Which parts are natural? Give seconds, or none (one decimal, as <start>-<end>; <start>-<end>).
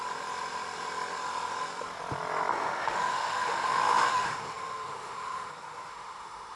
0.0-2.5; 5.5-5.9